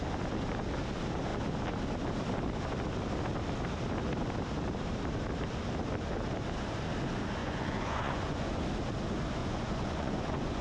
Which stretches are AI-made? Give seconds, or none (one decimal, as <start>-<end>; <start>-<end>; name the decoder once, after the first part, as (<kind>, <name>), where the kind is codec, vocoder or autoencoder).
7.4-8.6 (vocoder, Vocos); 9.4-10.6